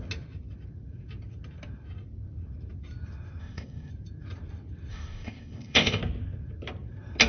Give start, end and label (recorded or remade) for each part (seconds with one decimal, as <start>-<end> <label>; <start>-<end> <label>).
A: 0.0-3.4 recorded; 3.4-3.9 remade; 3.9-4.9 recorded; 4.9-6.0 remade; 6.0-7.3 recorded